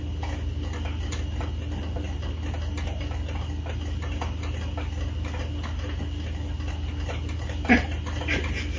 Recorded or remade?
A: recorded